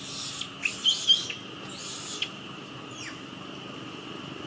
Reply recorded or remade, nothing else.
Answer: recorded